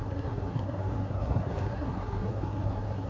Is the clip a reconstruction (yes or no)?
yes